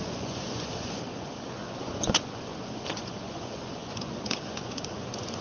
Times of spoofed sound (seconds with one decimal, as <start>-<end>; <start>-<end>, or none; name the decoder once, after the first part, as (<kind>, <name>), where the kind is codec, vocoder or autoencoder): 0.0-5.4 (vocoder, Vocos)